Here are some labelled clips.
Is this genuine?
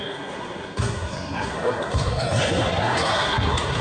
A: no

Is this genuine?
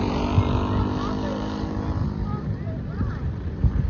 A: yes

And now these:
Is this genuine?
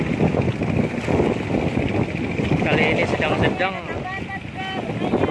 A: yes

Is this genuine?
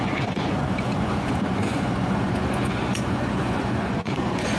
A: no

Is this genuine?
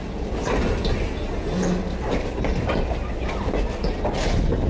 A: yes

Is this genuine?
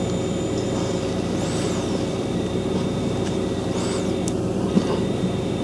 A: no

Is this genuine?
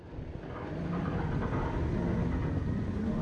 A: yes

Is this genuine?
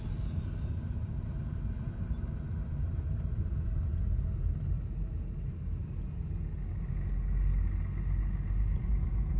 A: yes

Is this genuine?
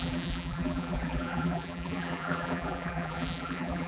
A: no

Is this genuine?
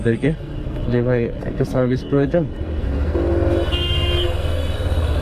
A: no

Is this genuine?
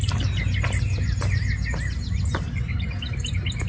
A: yes